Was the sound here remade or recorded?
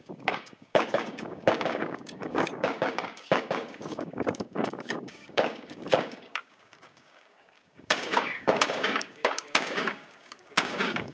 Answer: remade